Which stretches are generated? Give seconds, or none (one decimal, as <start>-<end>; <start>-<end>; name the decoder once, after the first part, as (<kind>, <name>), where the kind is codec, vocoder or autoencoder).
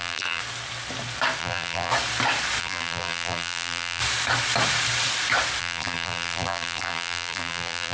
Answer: 0.0-0.4 (vocoder, BigVGAN v2); 1.4-1.9; 2.6-4.0; 5.6-7.9